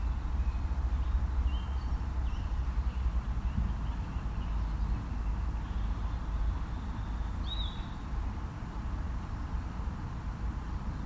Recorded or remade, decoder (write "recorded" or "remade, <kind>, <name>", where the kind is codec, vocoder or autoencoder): recorded